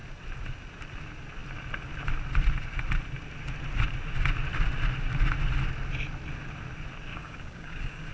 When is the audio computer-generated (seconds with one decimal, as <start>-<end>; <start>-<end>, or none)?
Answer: 7.1-8.1